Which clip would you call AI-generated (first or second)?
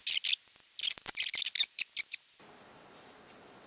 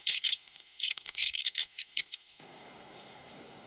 second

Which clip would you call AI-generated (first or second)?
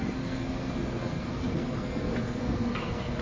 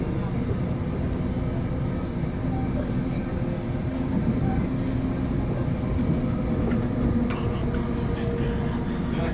first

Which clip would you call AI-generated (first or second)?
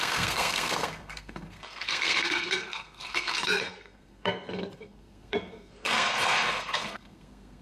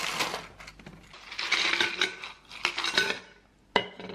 first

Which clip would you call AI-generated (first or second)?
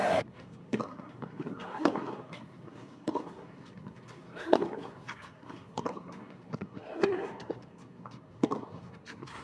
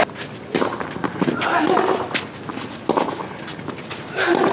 first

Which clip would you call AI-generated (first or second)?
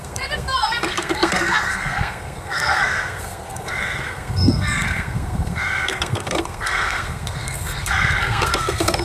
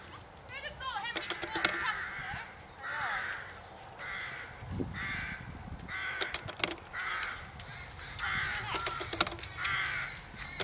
first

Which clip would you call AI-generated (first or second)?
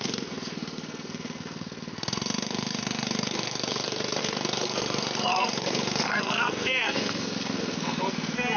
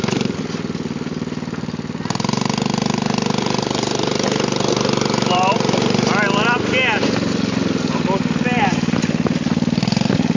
first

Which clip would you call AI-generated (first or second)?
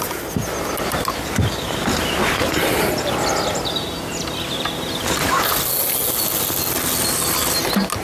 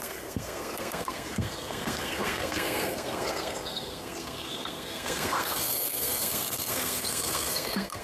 second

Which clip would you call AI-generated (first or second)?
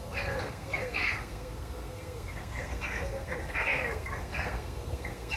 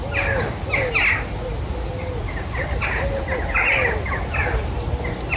first